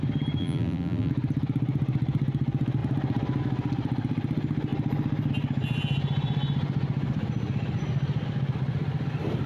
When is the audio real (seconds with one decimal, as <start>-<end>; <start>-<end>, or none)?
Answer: 0.0-0.4; 1.1-9.5